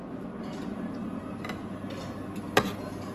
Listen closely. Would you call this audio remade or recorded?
recorded